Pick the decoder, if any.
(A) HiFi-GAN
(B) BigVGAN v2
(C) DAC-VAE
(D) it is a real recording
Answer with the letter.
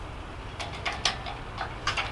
D